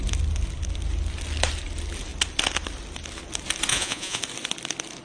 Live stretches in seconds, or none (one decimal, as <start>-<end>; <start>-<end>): 0.0-3.7; 4.2-5.0